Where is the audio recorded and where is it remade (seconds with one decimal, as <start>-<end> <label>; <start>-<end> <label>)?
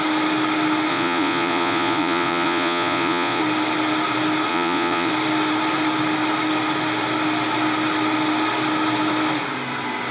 0.0-0.9 recorded; 0.9-3.4 remade; 3.4-4.5 recorded; 4.5-5.1 remade; 5.1-10.1 recorded